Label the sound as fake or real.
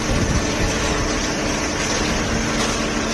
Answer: real